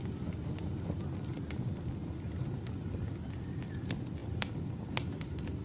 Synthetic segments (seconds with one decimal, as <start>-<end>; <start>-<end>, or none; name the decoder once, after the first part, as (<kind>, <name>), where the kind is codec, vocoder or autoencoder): none